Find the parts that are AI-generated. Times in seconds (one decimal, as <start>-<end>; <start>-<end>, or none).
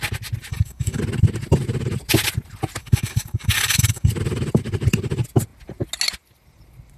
0.5-1.0; 2.8-4.1